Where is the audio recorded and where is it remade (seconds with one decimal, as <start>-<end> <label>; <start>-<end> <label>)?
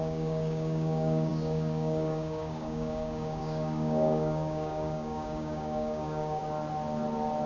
0.0-6.4 remade; 6.4-7.5 recorded